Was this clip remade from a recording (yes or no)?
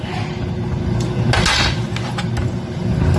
no